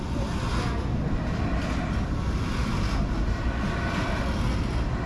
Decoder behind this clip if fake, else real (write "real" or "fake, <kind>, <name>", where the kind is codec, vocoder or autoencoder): real